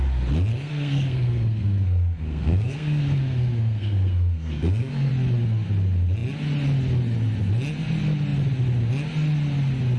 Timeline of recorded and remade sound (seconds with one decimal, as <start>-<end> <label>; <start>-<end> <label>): 0.0-0.5 recorded; 0.5-5.1 remade; 5.1-10.0 recorded